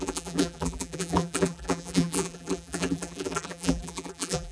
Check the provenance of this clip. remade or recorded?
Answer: remade